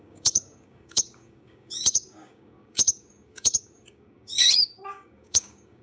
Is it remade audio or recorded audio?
remade